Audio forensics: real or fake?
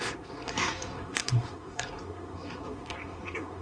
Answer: fake